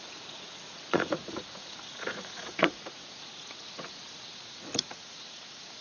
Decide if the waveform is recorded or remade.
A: remade